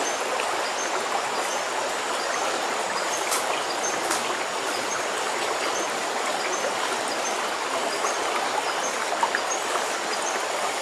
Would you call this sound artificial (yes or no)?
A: no